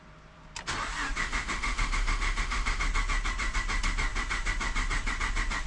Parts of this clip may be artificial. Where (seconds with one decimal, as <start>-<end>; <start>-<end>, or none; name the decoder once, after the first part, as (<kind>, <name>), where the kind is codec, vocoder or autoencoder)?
1.2-2.8 (autoencoder, DAC-VAE)